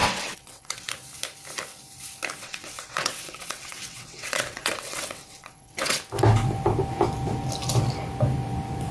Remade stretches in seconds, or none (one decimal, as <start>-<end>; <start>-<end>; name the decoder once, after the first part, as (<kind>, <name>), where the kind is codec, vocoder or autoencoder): 0.0-0.9 (vocoder, WaveNeXt); 2.4-6.0